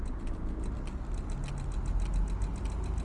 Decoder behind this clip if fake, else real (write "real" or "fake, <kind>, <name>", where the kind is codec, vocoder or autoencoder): real